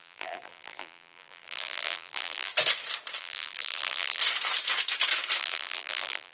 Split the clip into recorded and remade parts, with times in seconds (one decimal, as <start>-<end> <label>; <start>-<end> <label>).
0.0-2.5 remade; 2.5-3.2 recorded; 3.2-4.2 remade; 4.2-5.4 recorded; 5.4-6.3 remade